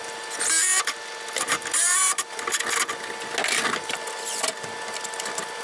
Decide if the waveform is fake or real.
real